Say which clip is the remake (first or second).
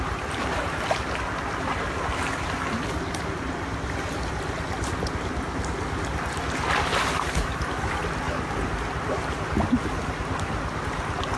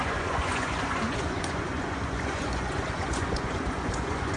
second